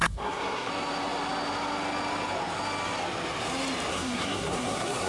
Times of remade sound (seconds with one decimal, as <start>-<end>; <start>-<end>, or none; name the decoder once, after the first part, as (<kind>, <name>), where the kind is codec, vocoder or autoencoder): 0.0-0.7 (codec, SNAC); 3.9-5.1